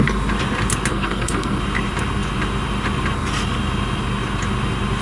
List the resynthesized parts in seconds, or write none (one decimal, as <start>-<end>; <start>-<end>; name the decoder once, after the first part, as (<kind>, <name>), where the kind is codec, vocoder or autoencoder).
0.9-1.6 (codec, SNAC)